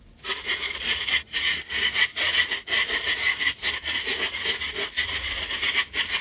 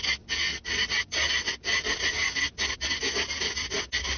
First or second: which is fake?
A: first